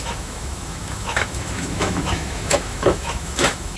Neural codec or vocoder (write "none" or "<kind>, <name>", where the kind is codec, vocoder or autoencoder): autoencoder, DAC-VAE